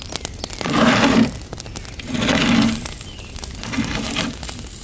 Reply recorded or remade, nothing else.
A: recorded